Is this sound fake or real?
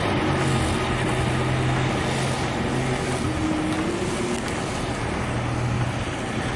real